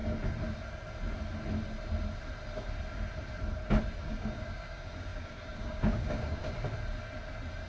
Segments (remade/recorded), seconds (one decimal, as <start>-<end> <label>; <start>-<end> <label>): 0.0-4.0 recorded; 4.0-6.4 remade; 6.4-7.7 recorded